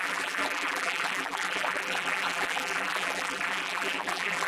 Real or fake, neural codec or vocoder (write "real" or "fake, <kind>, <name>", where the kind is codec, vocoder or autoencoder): fake, vocoder, BigVGAN v2